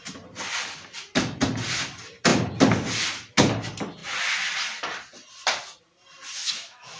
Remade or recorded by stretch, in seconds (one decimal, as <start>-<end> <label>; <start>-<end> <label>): 0.0-6.4 recorded; 6.4-7.0 remade